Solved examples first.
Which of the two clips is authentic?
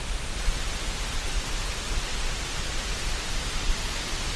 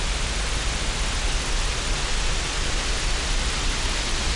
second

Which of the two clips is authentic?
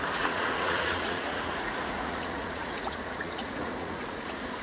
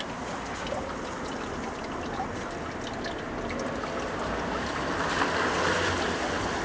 second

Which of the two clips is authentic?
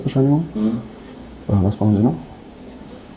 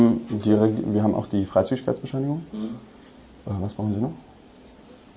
second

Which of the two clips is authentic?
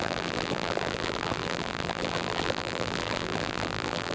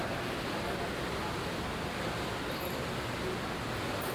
second